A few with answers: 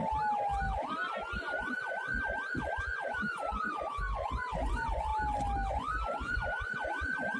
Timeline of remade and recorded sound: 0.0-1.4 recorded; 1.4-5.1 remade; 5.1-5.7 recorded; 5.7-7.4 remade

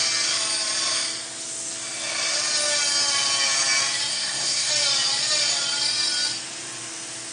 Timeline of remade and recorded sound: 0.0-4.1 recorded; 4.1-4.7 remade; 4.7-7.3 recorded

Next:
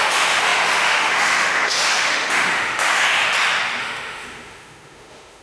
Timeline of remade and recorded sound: 0.0-3.3 remade; 3.3-3.8 recorded; 3.8-5.4 remade